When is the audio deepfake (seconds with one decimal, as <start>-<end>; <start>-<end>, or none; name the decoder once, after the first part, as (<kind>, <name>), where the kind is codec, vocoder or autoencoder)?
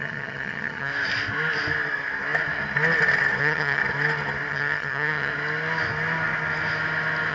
0.0-0.9 (vocoder, HiFi-GAN); 3.4-3.8; 4.5-5.3